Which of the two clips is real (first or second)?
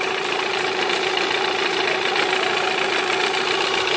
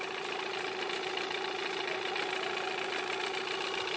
second